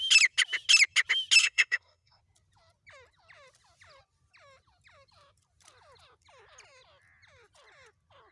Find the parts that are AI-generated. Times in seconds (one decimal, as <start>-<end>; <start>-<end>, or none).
1.4-2.2